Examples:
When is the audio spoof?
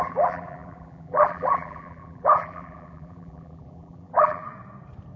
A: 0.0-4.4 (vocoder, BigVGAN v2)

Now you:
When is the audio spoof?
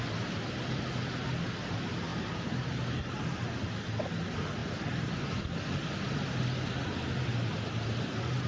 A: 2.1-3.2 (vocoder, BigVGAN v2)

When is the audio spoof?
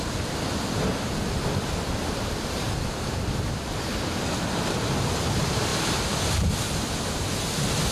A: none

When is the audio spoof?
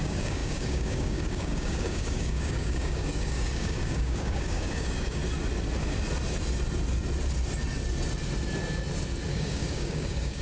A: 0.0-5.2 (codec, DAC); 9.3-10.4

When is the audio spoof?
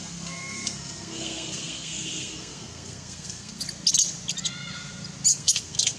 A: 0.0-3.6 (codec, SNAC); 5.3-6.0